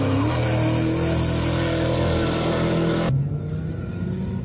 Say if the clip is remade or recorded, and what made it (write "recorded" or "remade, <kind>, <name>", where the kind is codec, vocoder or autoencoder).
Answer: recorded